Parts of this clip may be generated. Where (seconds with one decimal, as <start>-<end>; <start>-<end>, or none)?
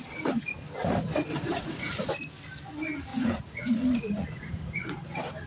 1.3-2.1; 3.1-5.0